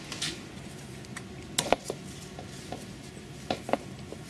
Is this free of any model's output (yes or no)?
yes